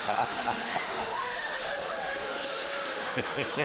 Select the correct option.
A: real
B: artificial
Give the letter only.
B